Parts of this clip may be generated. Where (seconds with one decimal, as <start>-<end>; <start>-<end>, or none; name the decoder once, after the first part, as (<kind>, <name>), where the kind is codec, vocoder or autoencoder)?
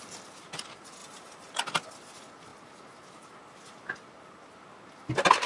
1.0-1.6 (vocoder, BigVGAN v2)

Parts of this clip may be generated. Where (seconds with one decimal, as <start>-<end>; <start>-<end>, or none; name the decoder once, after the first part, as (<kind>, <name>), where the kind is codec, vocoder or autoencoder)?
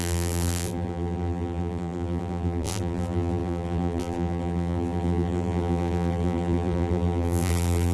0.0-7.9 (vocoder, BigVGAN v2)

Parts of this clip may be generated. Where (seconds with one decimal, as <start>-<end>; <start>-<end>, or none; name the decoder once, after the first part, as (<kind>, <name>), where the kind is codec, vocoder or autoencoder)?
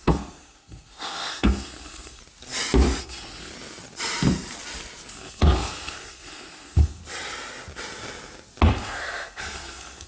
0.0-2.2 (codec, SNAC); 3.0-3.5; 5.1-7.0; 8.7-10.1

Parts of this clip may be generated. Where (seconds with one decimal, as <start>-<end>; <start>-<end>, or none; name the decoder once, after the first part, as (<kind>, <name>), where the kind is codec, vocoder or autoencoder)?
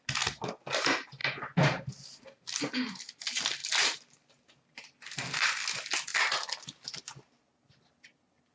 none